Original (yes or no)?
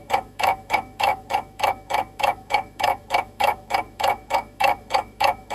no